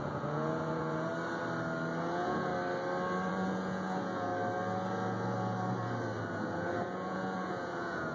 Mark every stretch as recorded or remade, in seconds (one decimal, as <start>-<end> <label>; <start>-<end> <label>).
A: 0.0-1.1 remade; 1.1-2.0 recorded; 2.0-2.5 remade; 2.5-3.3 recorded; 3.3-4.3 remade; 4.3-6.3 recorded; 6.3-8.1 remade